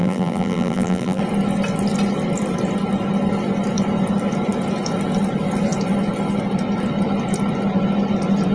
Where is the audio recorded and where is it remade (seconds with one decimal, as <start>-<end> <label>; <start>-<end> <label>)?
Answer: 0.0-1.2 remade; 1.2-8.5 recorded